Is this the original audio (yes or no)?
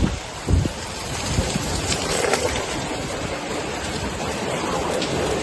no